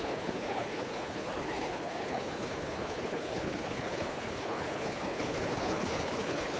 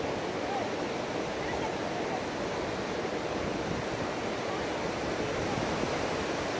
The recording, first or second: second